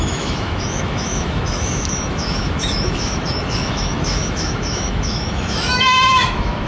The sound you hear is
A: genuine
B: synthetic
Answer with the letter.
B